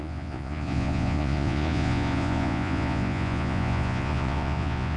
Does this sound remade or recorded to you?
remade